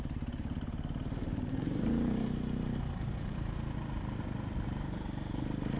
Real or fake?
fake